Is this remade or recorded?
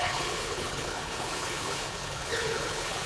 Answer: remade